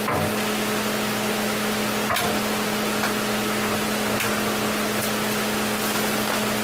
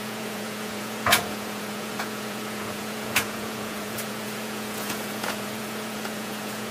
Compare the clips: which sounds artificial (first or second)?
second